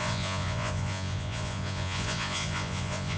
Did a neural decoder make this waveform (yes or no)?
yes